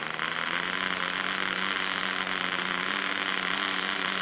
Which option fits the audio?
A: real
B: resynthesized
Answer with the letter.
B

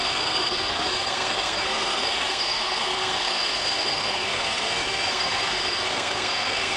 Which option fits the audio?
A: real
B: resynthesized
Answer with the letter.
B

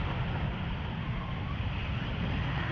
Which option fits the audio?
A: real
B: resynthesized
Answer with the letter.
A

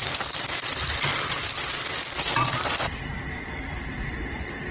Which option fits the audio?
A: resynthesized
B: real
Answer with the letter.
A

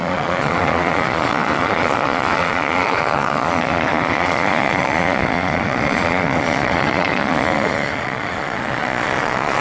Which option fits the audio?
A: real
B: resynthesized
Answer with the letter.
B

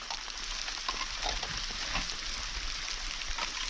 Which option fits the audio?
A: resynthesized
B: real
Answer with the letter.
B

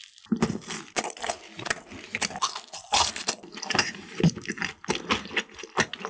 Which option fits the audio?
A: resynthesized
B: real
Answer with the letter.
B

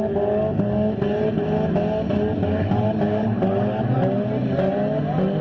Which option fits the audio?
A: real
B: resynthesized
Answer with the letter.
A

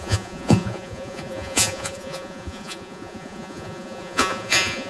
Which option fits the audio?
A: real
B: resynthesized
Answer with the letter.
B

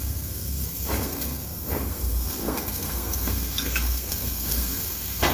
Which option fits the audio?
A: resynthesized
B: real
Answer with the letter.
A